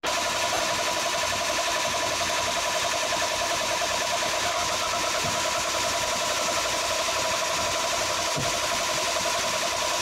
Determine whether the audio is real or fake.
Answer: real